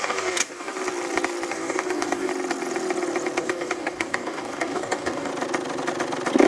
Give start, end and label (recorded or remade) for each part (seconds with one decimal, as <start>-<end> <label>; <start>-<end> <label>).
0.0-0.7 remade; 0.7-1.5 recorded; 1.5-2.3 remade; 2.3-3.4 recorded; 3.4-5.3 remade; 5.3-6.5 recorded